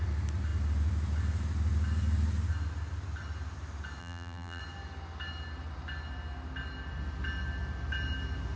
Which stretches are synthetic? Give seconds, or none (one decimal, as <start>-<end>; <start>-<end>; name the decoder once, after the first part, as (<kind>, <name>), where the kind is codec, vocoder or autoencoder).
4.0-4.6 (vocoder, BigVGAN v2)